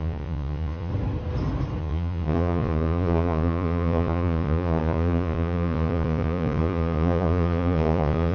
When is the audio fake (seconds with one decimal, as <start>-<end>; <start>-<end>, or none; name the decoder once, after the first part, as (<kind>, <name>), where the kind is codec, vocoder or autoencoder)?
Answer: 0.0-0.9 (vocoder, Vocos); 1.8-8.3